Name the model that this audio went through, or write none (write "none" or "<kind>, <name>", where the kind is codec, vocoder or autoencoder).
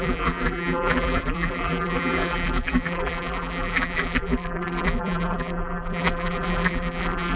vocoder, BigVGAN v2